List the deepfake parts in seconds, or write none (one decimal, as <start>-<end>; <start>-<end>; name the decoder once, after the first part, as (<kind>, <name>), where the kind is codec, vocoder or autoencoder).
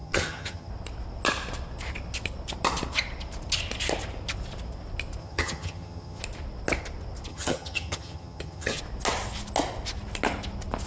0.0-0.7 (vocoder, HiFi-GAN); 5.2-6.2; 7.3-8.8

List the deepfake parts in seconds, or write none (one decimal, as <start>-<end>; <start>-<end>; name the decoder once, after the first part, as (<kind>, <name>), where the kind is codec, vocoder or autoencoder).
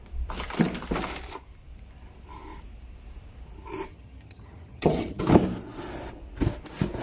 3.9-5.2 (vocoder, HiFi-GAN)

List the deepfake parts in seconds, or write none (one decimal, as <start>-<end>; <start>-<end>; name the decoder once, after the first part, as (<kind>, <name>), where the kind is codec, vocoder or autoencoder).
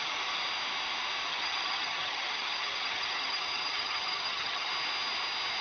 1.3-4.7 (vocoder, HiFi-GAN)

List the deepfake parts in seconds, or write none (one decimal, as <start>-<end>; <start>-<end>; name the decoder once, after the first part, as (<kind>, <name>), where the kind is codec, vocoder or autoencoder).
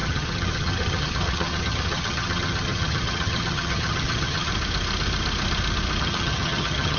0.0-4.5 (vocoder, HiFi-GAN); 6.0-7.0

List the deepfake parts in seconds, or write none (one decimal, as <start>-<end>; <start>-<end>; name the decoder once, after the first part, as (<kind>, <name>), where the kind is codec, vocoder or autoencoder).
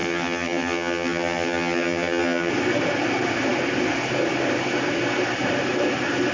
0.0-2.5 (vocoder, HiFi-GAN)